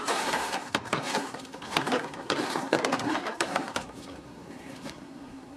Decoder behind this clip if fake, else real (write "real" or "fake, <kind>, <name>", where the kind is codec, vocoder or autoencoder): fake, codec, SNAC